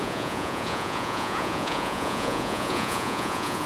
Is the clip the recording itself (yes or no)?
no